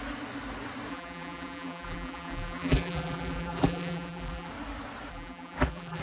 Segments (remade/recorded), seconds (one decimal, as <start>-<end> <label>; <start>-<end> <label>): 0.0-0.9 recorded; 0.9-4.5 remade; 4.5-5.1 recorded; 5.1-6.0 remade